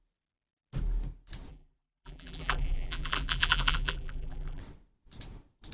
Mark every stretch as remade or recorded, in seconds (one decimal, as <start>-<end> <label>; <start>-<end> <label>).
0.0-1.5 recorded; 1.5-4.6 remade; 4.6-5.7 recorded